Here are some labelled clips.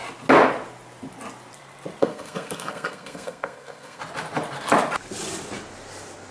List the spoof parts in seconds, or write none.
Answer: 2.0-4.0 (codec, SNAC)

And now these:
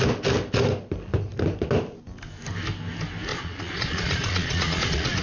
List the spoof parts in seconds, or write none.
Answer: 3.3-5.2 (vocoder, Vocos)

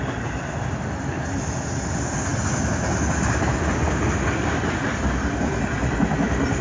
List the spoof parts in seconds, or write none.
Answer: none

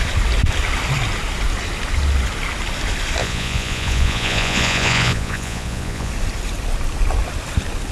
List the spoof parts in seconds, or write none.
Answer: 3.2-6.1 (vocoder, Vocos)

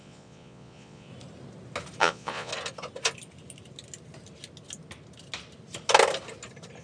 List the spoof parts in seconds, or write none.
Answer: 0.0-1.1 (vocoder, Vocos); 2.0-2.5

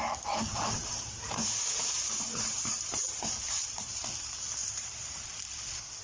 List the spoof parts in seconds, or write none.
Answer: 0.8-4.0 (vocoder, BigVGAN v2); 4.6-5.3

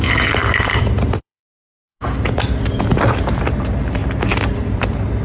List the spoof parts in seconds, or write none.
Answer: 0.0-4.0 (vocoder, BigVGAN v2); 4.6-5.2